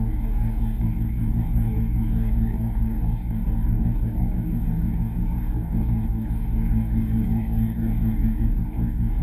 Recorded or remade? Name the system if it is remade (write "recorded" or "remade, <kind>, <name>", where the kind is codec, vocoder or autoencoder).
remade, codec, DAC